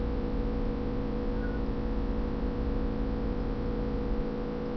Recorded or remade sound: recorded